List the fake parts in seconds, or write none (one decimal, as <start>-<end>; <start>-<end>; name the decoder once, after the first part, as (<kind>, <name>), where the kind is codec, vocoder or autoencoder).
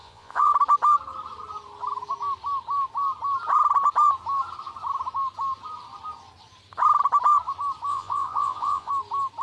0.0-0.5 (vocoder, Vocos); 7.9-8.9